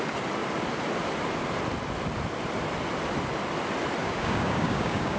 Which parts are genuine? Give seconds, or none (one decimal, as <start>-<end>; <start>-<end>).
0.0-4.0